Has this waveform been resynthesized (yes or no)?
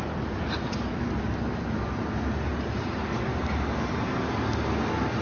no